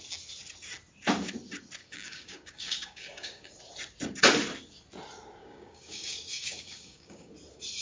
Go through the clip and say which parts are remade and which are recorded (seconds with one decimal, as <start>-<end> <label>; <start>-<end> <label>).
0.0-1.8 recorded; 1.8-3.6 remade; 3.6-5.4 recorded; 5.4-7.3 remade; 7.3-7.8 recorded